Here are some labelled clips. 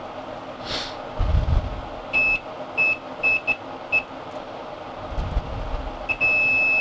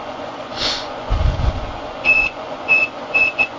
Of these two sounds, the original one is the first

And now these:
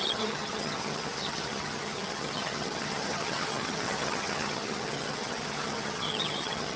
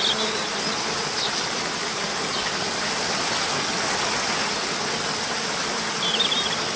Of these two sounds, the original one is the second